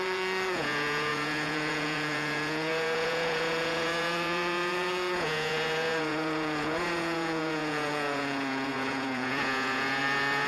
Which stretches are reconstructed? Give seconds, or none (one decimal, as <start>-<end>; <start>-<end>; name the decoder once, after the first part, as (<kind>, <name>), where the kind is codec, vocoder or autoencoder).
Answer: 0.0-10.5 (vocoder, Vocos)